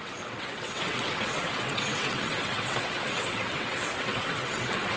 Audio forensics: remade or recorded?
remade